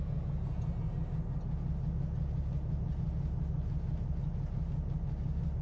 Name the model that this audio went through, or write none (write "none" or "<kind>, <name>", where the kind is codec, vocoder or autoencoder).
none